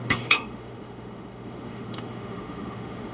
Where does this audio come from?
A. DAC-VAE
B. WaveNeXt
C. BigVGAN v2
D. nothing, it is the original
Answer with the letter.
A